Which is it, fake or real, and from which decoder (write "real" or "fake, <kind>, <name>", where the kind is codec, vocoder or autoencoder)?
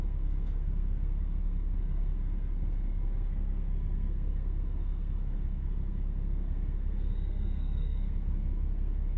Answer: fake, codec, SNAC